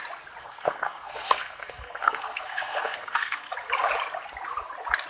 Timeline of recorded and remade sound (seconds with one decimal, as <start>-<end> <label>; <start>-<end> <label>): 0.0-0.4 recorded; 0.4-3.5 remade; 3.5-5.1 recorded